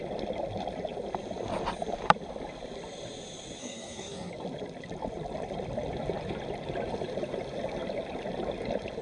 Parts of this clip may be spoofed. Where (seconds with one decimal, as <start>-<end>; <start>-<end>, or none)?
3.6-4.3